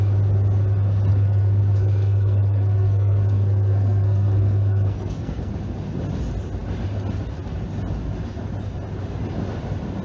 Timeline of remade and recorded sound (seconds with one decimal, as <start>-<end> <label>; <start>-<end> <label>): 0.0-1.1 recorded; 1.1-5.5 remade; 5.5-10.0 recorded